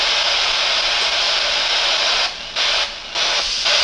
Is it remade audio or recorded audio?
recorded